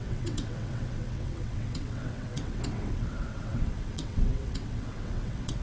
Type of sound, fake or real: fake